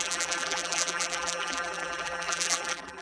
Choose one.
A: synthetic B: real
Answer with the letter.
A